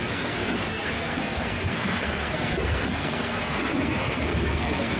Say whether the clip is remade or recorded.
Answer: remade